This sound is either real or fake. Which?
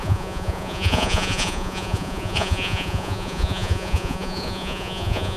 fake